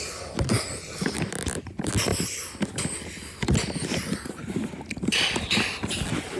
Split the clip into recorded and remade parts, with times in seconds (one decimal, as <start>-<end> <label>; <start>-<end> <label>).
0.0-6.4 recorded